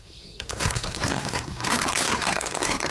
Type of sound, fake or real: fake